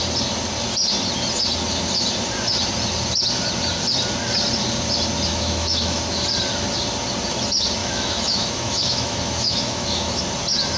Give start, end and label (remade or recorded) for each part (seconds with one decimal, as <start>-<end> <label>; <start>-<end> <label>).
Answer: 0.0-5.3 recorded; 5.3-6.0 remade; 6.0-7.8 recorded; 7.8-10.2 remade; 10.2-10.8 recorded

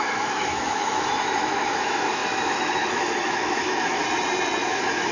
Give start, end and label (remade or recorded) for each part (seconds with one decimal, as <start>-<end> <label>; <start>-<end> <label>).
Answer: 0.0-4.0 remade; 4.0-4.6 recorded; 4.6-5.1 remade